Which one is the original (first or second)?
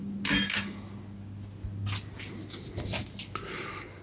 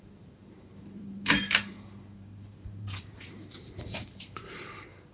first